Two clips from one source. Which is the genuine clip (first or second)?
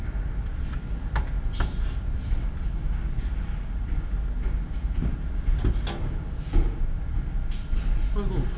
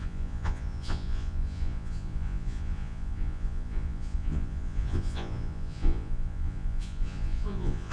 first